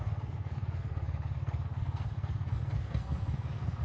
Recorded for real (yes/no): no